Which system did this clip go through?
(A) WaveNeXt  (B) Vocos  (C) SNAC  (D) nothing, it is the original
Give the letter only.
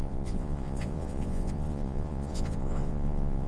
B